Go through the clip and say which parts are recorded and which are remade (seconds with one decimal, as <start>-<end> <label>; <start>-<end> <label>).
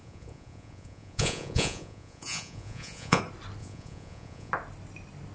0.0-3.2 remade; 3.2-3.6 recorded; 3.6-4.5 remade; 4.5-5.3 recorded